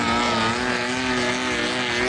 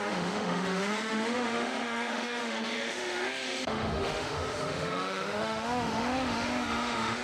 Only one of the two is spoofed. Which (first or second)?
second